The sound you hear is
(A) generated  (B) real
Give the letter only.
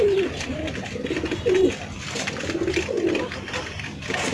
B